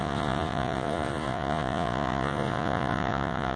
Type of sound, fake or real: fake